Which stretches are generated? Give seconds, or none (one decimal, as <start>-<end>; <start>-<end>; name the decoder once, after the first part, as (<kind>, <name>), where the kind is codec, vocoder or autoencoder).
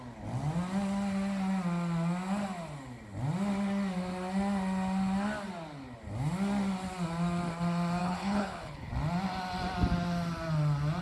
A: 8.0-8.9 (codec, HILCodec)